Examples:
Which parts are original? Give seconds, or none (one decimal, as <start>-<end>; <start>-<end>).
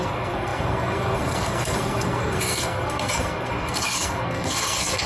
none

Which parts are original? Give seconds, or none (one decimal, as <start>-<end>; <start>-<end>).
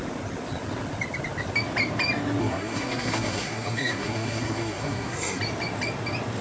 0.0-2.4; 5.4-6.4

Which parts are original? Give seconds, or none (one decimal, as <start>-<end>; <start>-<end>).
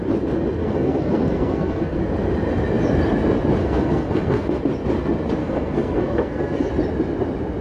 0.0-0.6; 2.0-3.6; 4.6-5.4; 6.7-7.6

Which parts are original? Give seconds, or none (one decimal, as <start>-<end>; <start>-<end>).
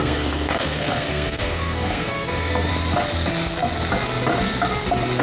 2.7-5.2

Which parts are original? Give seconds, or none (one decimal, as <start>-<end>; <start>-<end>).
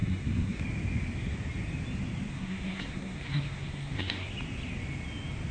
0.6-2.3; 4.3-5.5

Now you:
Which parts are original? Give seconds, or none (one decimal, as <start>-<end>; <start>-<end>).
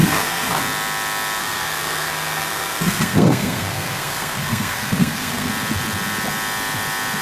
0.6-1.4; 5.5-7.2